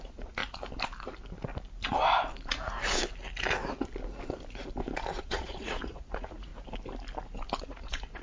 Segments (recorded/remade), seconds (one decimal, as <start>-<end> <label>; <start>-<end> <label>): 0.0-0.4 remade; 0.4-5.2 recorded; 5.2-6.5 remade; 6.5-7.6 recorded; 7.6-8.2 remade

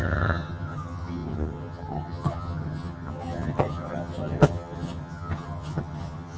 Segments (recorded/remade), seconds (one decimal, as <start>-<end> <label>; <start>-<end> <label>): 0.0-6.4 remade

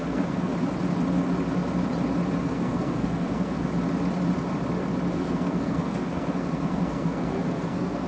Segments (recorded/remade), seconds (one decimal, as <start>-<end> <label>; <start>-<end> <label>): 0.0-0.5 remade; 0.5-2.4 recorded; 2.4-3.7 remade; 3.7-5.1 recorded; 5.1-8.1 remade

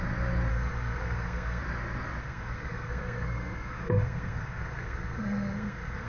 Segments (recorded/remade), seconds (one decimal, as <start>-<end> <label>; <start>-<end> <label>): 0.0-0.5 recorded; 0.5-1.6 remade; 1.6-2.2 recorded; 2.2-6.1 remade

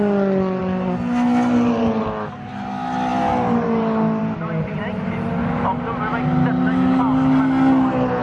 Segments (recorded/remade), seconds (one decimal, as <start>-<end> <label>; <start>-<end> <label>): 0.0-8.2 recorded

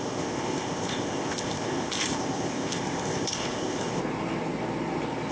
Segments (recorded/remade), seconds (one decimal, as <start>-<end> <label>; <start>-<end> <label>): 0.0-4.0 remade; 4.0-5.3 recorded